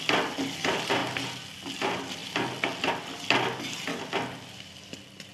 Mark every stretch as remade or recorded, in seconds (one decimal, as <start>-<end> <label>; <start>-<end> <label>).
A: 0.0-5.3 recorded